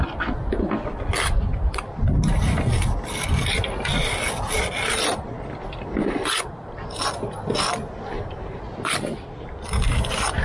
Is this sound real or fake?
real